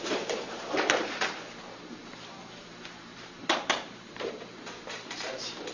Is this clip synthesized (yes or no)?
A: yes